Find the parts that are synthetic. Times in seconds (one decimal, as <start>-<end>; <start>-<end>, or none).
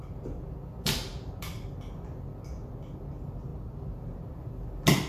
3.5-4.3